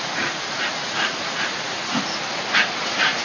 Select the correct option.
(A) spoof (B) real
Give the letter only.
A